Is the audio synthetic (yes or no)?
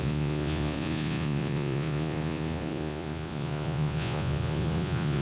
yes